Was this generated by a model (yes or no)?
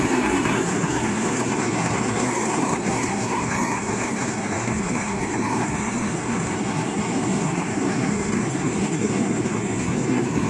yes